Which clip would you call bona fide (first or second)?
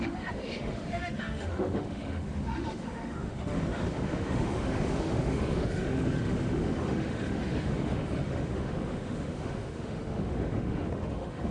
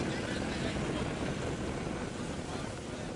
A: second